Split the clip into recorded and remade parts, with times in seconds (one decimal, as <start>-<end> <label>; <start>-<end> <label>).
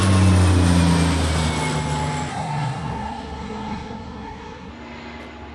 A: 0.0-2.3 recorded; 2.3-4.7 remade; 4.7-5.5 recorded